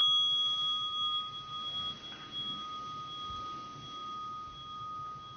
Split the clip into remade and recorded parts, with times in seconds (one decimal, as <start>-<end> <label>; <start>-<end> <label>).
0.0-5.4 recorded